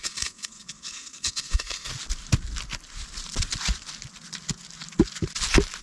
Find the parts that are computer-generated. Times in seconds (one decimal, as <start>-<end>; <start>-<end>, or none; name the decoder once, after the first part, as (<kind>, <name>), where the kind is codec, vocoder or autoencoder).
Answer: 0.0-1.9 (codec, SNAC)